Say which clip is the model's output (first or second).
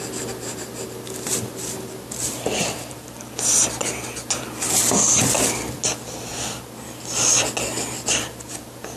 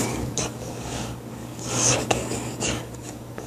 second